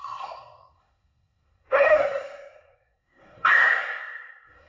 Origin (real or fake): fake